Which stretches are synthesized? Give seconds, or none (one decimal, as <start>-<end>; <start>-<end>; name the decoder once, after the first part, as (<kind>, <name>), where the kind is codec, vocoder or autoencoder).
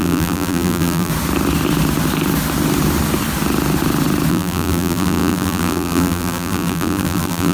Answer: 0.0-1.1 (vocoder, BigVGAN v2); 4.3-7.5